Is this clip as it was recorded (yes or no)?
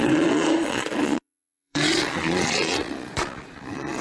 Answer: no